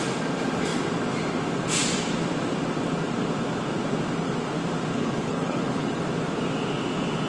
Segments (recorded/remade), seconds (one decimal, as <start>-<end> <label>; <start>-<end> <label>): 0.0-4.9 recorded; 4.9-6.0 remade; 6.0-7.3 recorded